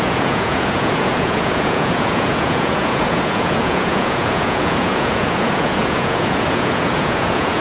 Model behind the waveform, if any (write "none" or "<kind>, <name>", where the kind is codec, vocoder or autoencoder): vocoder, Vocos